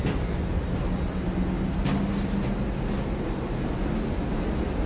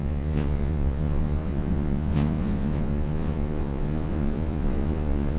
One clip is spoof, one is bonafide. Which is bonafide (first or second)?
first